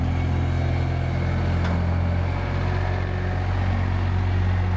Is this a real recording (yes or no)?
yes